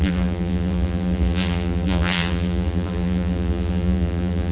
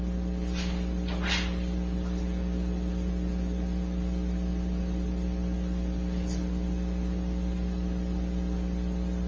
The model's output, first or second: first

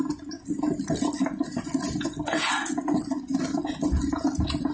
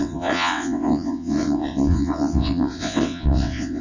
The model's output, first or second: second